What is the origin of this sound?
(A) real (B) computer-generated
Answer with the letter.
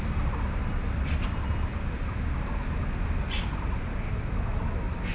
A